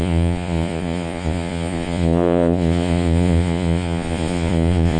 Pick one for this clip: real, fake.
fake